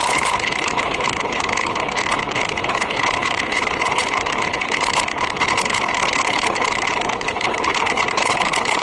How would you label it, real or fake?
fake